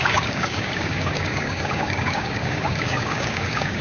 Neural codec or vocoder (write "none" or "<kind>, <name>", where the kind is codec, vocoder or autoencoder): codec, DAC